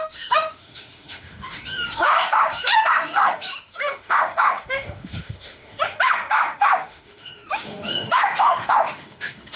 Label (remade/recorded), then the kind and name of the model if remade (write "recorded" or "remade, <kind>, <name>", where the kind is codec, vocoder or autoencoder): remade, autoencoder, DAC-VAE